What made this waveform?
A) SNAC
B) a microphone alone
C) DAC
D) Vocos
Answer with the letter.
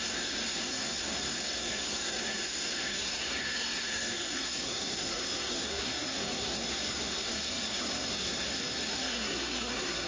A